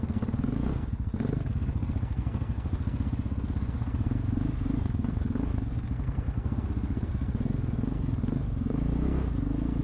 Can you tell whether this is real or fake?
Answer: fake